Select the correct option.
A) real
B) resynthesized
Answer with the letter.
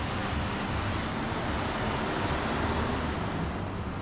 A